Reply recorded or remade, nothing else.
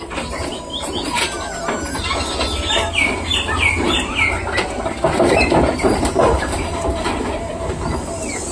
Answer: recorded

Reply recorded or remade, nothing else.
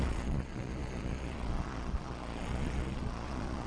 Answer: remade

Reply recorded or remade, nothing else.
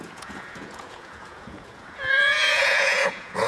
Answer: remade